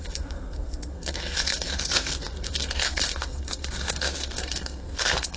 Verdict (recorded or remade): remade